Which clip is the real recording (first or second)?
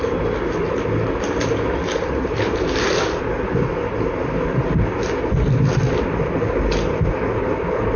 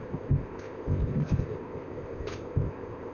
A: first